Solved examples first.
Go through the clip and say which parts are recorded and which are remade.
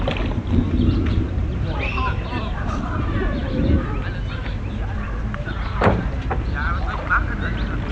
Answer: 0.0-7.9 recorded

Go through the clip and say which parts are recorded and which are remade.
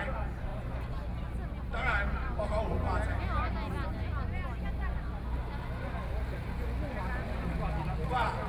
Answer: 0.0-8.5 recorded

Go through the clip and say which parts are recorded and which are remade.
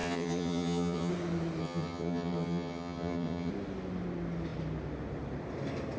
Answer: 0.0-1.1 remade; 1.1-1.6 recorded; 1.6-3.5 remade; 3.5-6.0 recorded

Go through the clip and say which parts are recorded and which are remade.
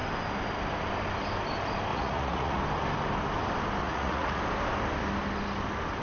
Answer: 0.0-1.9 recorded; 1.9-2.6 remade; 2.6-3.8 recorded; 3.8-4.4 remade; 4.4-6.0 recorded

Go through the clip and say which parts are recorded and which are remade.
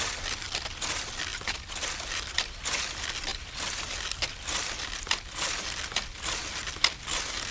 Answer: 0.0-7.5 recorded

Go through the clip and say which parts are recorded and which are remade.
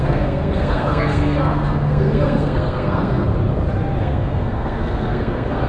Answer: 0.0-3.3 remade; 3.3-4.0 recorded; 4.0-5.7 remade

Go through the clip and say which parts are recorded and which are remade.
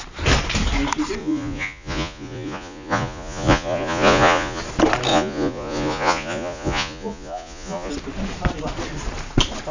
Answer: 0.0-1.2 recorded; 1.2-4.6 remade; 4.6-5.1 recorded; 5.1-7.9 remade; 7.9-9.7 recorded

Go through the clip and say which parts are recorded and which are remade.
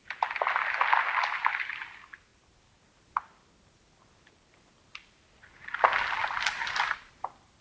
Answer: 0.0-6.2 recorded; 6.2-6.9 remade; 6.9-7.6 recorded